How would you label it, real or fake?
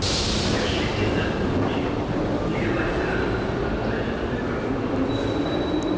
real